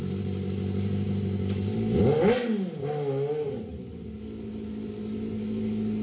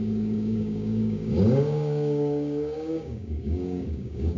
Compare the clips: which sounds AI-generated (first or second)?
second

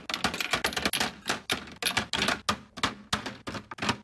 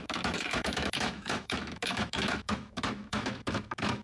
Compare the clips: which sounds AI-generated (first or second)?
second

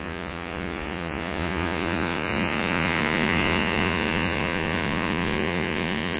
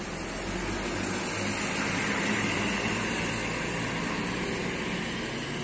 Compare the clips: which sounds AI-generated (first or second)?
first